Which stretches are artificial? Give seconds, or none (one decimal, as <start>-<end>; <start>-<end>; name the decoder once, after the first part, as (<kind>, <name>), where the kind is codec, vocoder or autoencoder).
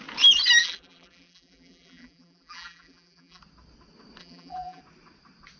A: 0.6-3.4 (vocoder, BigVGAN v2); 4.2-4.8